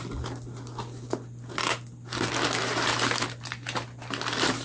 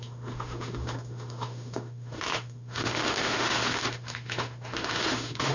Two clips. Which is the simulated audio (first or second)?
second